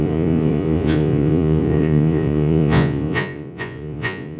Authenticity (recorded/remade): remade